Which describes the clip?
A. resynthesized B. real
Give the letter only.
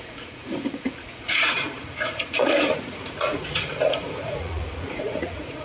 A